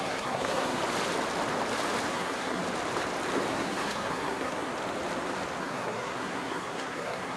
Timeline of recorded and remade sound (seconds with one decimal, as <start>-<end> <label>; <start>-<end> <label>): 0.0-0.8 remade; 0.8-2.1 recorded; 2.1-2.6 remade; 2.6-3.5 recorded; 3.5-4.7 remade; 4.7-5.6 recorded; 5.6-7.4 remade